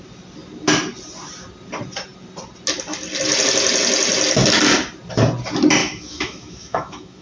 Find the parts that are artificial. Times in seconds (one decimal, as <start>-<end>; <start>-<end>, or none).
5.8-7.2